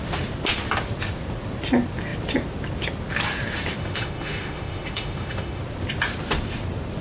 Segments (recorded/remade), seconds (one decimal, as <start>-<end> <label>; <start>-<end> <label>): 0.0-3.8 recorded; 3.8-5.6 remade; 5.6-7.0 recorded